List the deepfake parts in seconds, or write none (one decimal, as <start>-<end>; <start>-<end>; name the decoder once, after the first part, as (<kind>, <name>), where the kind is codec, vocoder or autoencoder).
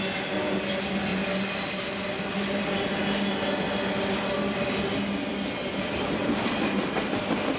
none